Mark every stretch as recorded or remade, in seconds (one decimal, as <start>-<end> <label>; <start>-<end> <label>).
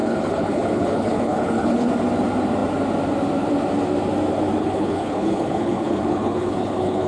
0.0-1.9 remade; 1.9-4.6 recorded; 4.6-7.1 remade